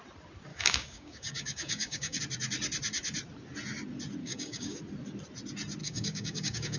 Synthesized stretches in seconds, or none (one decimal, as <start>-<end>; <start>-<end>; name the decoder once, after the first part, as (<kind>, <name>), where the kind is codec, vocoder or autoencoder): 0.5-2.2 (codec, DAC); 4.2-4.8; 5.8-6.8